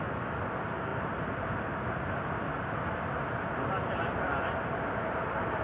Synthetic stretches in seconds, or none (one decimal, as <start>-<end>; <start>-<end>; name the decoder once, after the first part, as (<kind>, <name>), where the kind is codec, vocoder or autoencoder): none